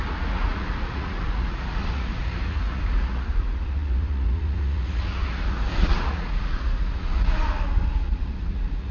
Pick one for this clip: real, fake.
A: fake